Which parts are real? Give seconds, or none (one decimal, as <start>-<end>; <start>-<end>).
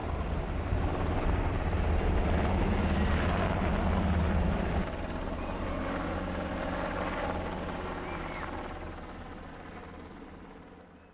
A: 0.0-11.1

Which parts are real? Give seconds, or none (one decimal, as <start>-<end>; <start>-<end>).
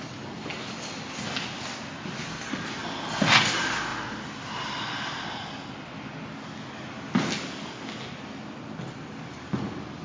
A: 0.0-10.0